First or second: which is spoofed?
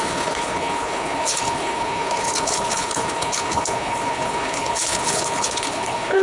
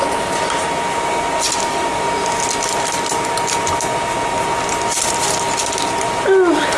first